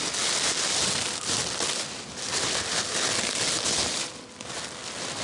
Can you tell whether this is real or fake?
real